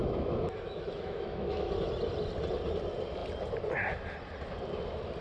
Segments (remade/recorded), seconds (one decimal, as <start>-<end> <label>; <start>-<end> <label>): 0.0-1.7 remade; 1.7-5.2 recorded